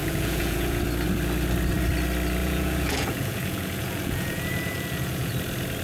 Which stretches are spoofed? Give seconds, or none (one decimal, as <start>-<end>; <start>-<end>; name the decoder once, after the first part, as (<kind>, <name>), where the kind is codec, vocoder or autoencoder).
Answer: 0.0-0.8 (vocoder, Vocos); 2.4-5.3